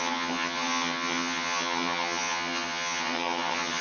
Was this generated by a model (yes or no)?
yes